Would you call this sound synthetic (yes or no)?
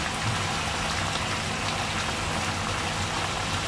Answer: no